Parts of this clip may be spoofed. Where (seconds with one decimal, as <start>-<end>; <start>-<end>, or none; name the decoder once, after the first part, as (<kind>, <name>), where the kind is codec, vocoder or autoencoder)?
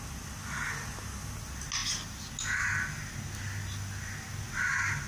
none